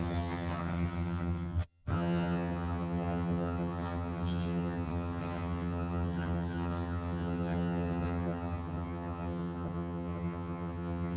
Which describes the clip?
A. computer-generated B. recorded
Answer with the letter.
A